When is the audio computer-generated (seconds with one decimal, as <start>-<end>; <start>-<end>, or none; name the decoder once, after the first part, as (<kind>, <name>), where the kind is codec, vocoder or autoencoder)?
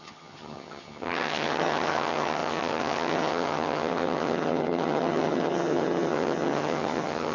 0.0-7.3 (vocoder, HiFi-GAN)